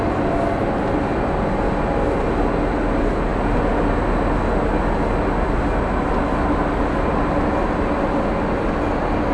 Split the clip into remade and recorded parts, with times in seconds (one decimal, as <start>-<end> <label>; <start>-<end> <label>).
0.0-9.3 recorded